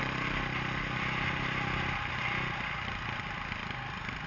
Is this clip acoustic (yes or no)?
yes